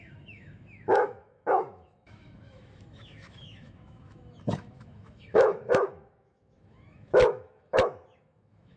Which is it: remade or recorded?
remade